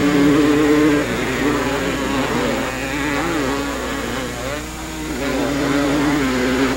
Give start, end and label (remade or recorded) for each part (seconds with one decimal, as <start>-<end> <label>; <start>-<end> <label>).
0.0-6.8 recorded